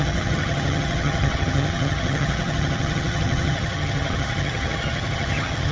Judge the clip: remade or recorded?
remade